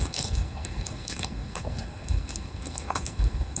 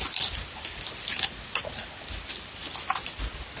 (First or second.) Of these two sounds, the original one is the second